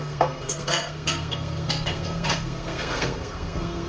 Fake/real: fake